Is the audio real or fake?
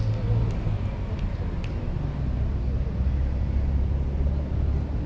real